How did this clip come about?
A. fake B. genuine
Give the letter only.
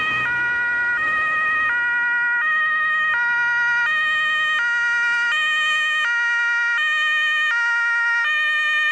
B